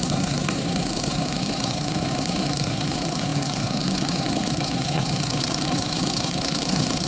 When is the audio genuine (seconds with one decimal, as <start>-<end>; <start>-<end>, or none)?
none